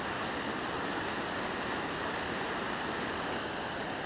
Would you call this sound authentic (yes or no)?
yes